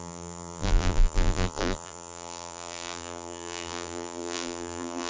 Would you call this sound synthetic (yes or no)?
yes